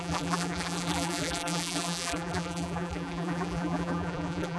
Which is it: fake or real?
fake